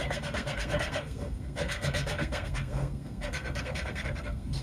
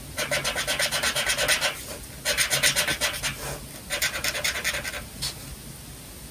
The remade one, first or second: first